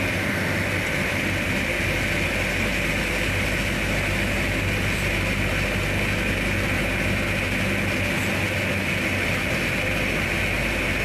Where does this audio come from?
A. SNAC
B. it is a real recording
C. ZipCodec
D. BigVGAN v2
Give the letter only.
B